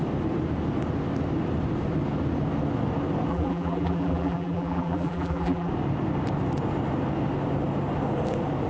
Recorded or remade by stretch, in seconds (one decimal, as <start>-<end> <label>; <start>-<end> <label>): 0.0-3.3 recorded; 3.3-5.7 remade; 5.7-8.7 recorded